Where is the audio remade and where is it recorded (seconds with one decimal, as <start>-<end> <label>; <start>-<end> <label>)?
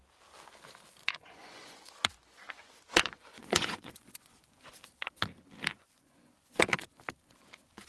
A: 0.0-1.0 recorded; 1.0-4.8 remade; 4.8-5.7 recorded; 5.7-7.0 remade; 7.0-7.9 recorded